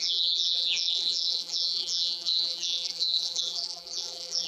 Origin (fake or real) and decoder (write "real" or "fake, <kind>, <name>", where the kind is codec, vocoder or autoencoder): fake, vocoder, BigVGAN v2